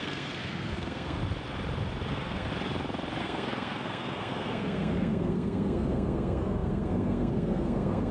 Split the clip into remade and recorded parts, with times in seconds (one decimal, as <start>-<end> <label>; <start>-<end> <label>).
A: 0.0-1.2 remade; 1.2-2.1 recorded; 2.1-2.5 remade; 2.5-3.2 recorded; 3.2-8.1 remade